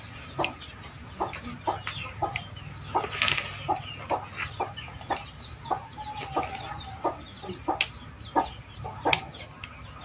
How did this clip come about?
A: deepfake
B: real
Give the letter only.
B